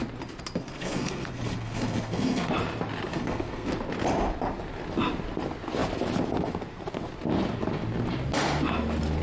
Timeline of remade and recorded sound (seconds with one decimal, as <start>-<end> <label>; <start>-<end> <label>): 0.0-0.6 recorded; 0.6-2.5 remade; 2.5-3.1 recorded; 3.1-3.7 remade; 3.7-9.2 recorded